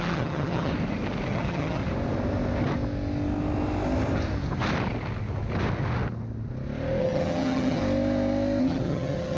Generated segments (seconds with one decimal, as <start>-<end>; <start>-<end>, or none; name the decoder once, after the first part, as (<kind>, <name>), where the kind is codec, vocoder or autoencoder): 0.0-0.7 (vocoder, HiFi-GAN); 1.3-1.8; 7.0-7.8; 8.6-9.4